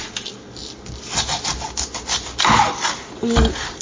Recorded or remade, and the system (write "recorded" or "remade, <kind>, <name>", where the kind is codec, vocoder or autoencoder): recorded